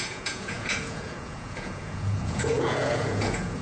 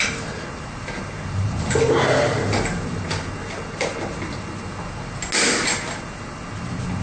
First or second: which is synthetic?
first